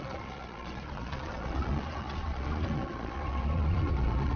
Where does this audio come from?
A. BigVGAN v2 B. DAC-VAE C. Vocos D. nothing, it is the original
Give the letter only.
C